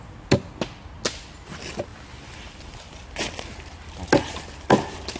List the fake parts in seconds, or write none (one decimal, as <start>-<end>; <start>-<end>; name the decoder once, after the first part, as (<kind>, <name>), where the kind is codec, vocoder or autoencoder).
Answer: none